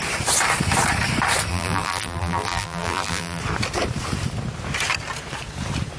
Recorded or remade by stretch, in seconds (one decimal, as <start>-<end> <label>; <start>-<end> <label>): 0.0-1.5 recorded; 1.5-3.4 remade; 3.4-6.0 recorded